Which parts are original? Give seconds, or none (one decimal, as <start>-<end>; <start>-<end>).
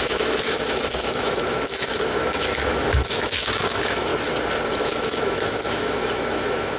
4.1-4.8